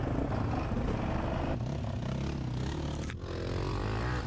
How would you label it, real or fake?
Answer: real